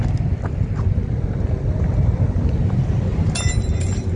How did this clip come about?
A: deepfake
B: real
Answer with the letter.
B